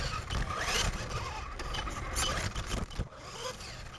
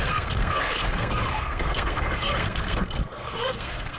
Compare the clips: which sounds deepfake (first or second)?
second